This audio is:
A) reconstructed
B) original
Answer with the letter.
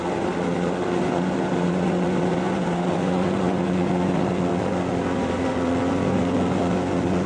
A